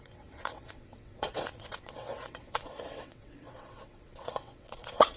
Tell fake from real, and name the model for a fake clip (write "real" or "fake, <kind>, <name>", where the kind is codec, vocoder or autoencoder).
fake, vocoder, WaveNeXt